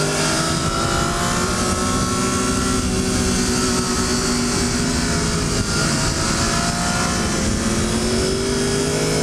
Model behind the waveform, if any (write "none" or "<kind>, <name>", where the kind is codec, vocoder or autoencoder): none